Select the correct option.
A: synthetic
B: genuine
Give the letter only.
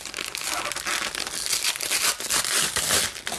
B